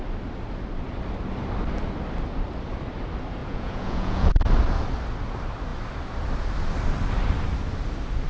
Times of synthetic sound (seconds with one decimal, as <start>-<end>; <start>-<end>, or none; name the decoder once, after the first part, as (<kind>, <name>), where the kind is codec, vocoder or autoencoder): 3.4-4.3 (vocoder, Vocos)